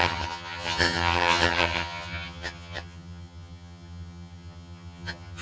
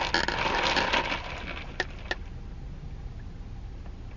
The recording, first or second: second